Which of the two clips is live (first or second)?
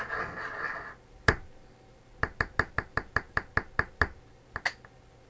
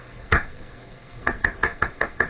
first